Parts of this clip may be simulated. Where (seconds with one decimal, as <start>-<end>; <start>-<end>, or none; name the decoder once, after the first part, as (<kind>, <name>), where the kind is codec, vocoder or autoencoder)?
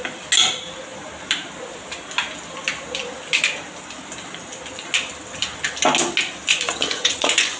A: 6.5-7.6 (vocoder, Vocos)